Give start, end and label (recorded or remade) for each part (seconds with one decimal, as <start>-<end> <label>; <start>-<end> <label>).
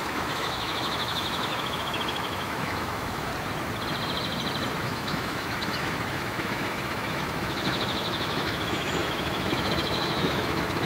0.0-3.3 remade; 3.3-4.8 recorded; 4.8-10.9 remade